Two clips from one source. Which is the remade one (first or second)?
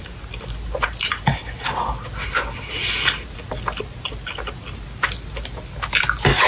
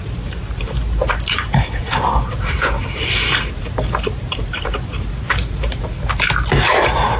second